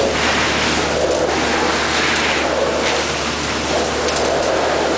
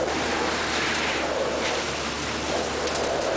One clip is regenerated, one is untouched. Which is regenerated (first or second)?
second